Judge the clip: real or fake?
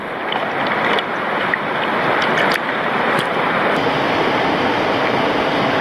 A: real